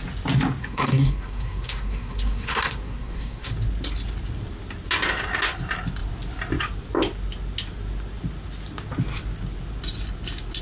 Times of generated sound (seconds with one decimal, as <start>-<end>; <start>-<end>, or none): 0.6-3.5